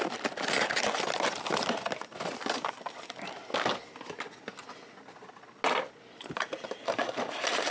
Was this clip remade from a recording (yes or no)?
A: no